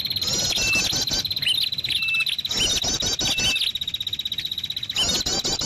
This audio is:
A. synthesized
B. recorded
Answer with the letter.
B